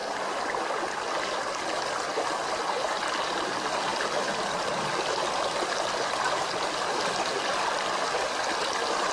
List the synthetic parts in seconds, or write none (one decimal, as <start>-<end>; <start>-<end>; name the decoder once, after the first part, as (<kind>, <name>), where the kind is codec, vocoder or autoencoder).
none